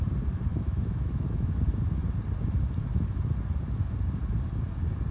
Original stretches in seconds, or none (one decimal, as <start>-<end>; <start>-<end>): 0.0-0.5; 1.6-5.1